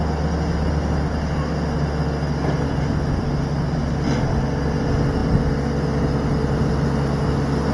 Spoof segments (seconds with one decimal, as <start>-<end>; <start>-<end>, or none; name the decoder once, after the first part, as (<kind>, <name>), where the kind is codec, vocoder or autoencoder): none